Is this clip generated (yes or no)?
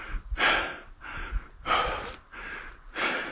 no